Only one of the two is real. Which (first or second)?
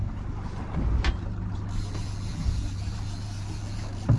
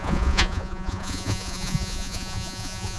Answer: first